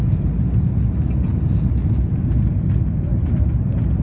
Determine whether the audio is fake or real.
real